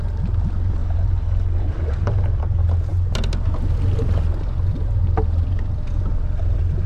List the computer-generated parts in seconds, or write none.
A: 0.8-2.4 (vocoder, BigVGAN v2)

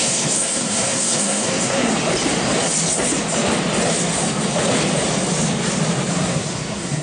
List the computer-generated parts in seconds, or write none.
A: 0.0-1.9 (codec, SNAC); 6.1-7.0

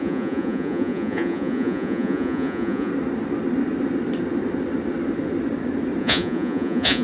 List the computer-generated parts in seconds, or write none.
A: 0.0-2.9 (vocoder, Vocos); 6.0-7.0

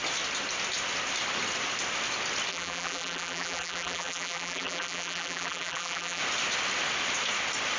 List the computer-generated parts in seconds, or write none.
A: 2.5-6.2 (vocoder, BigVGAN v2)